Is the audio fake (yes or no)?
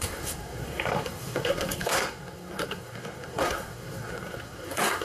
yes